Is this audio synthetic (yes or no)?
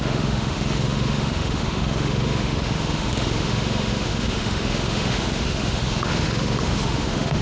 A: yes